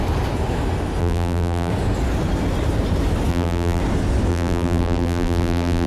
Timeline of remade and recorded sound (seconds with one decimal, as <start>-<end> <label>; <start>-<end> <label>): 0.0-1.0 recorded; 1.0-1.7 remade; 1.7-3.3 recorded; 3.3-3.8 remade; 3.8-4.3 recorded; 4.3-5.9 remade

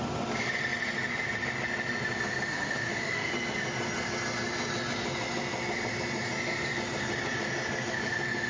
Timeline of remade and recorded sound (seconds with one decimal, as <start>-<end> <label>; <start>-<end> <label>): 0.0-2.5 recorded; 2.5-3.3 remade; 3.3-8.5 recorded

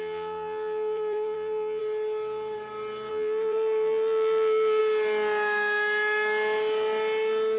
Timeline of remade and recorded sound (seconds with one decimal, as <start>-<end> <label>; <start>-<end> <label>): 0.0-1.8 remade; 1.8-3.1 recorded; 3.1-4.8 remade; 4.8-7.6 recorded

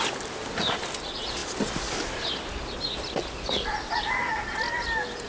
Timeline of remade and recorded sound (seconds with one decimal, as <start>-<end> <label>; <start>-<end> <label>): 0.0-5.3 recorded

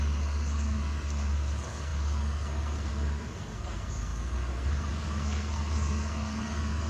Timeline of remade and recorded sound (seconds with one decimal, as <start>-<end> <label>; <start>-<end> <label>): 0.0-6.9 remade

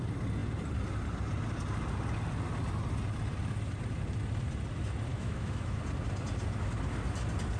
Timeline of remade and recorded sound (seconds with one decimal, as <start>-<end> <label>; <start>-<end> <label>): 0.0-5.1 recorded; 5.1-5.8 remade; 5.8-7.6 recorded